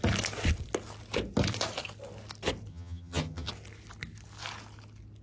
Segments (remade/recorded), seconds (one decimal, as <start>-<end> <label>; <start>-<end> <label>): 0.0-2.7 recorded; 2.7-3.5 remade; 3.5-5.2 recorded